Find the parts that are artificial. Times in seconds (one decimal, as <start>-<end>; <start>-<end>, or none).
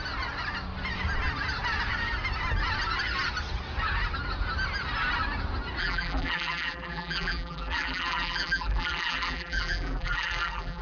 5.8-10.8